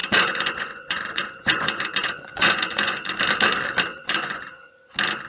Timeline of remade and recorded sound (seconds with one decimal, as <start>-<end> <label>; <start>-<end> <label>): 0.0-3.2 remade; 3.2-3.9 recorded; 3.9-4.4 remade; 4.4-5.3 recorded